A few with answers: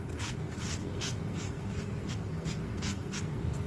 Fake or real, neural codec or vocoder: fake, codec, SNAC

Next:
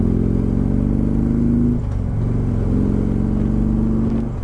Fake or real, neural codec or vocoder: real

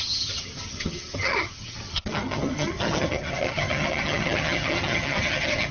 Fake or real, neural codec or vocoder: fake, vocoder, HiFi-GAN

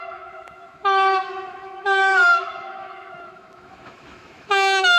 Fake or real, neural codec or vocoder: fake, autoencoder, DAC-VAE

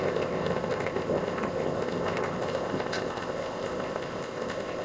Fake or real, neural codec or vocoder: fake, codec, ZipCodec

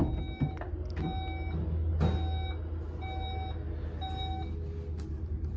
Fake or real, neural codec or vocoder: real